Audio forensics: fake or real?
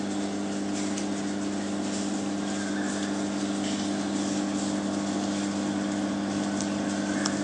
real